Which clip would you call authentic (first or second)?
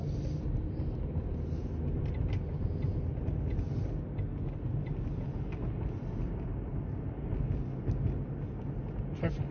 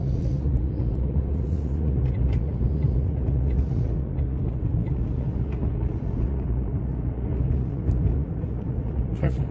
first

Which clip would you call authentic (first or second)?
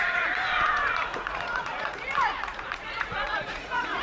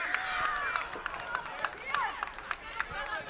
second